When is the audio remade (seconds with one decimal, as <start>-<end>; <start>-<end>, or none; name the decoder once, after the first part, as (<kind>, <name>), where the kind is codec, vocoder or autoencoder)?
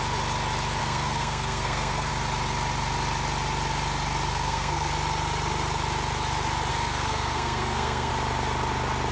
0.8-2.1 (codec, SNAC); 4.3-4.9; 6.7-8.1